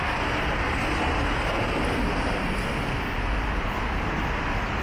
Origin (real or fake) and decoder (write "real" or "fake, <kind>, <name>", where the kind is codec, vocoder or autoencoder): real